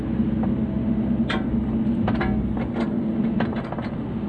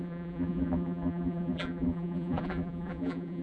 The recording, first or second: first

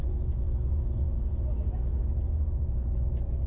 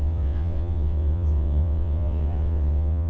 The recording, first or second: first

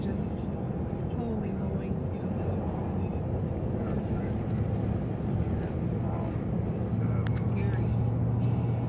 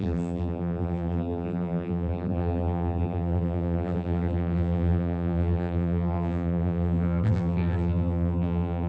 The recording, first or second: first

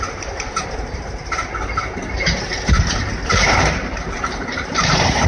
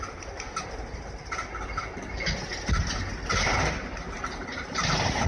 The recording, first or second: second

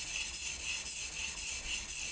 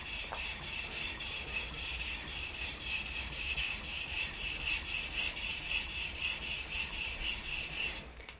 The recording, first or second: first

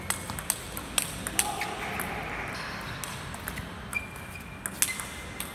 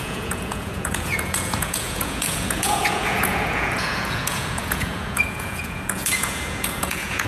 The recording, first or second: first